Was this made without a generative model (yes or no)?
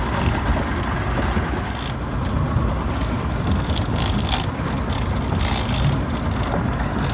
yes